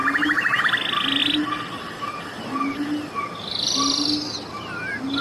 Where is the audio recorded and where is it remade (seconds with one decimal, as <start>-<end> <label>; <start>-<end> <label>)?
0.0-5.2 recorded